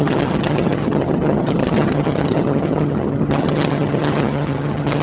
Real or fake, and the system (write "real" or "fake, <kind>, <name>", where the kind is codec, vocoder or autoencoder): fake, vocoder, HiFi-GAN